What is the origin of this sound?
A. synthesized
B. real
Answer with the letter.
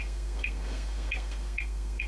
A